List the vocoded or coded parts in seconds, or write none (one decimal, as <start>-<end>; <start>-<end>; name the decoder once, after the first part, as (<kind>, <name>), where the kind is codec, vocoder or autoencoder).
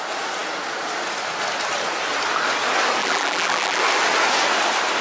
3.0-3.8 (vocoder, BigVGAN v2)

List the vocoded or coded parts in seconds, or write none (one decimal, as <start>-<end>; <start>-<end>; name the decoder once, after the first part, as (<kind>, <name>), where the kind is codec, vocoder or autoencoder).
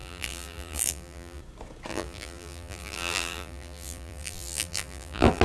0.0-1.4 (vocoder, BigVGAN v2); 1.9-5.4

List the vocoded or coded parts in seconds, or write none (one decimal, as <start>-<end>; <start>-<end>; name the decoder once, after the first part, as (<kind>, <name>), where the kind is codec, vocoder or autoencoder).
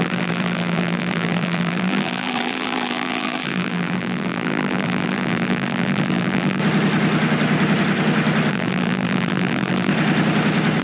0.0-6.6 (vocoder, BigVGAN v2); 8.5-9.9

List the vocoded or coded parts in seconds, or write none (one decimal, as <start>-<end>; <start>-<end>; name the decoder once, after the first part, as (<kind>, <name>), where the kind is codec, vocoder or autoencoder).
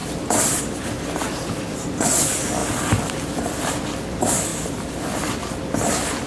0.0-0.6 (vocoder, BigVGAN v2); 2.6-3.7; 4.5-5.0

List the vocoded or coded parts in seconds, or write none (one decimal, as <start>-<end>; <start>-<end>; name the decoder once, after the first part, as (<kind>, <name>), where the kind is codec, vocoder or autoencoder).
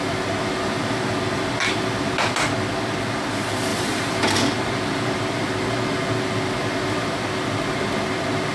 3.7-5.4 (vocoder, BigVGAN v2)